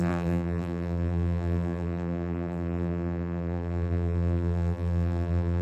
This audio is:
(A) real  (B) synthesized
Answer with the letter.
B